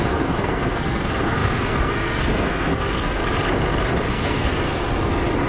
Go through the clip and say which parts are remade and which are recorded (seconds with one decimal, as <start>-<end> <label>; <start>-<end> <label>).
0.0-3.2 remade; 3.2-4.1 recorded; 4.1-4.8 remade; 4.8-5.5 recorded